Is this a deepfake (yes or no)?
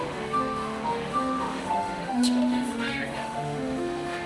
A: yes